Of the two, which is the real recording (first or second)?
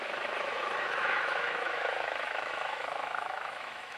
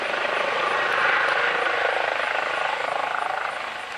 second